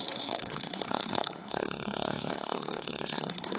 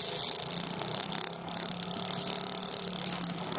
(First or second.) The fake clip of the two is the first